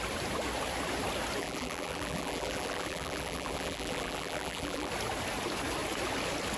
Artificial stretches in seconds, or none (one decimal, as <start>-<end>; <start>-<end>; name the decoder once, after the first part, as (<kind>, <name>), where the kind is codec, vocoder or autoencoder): 1.4-4.9 (vocoder, BigVGAN v2)